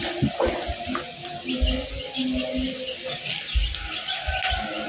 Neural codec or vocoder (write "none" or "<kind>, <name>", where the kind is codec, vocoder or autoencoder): none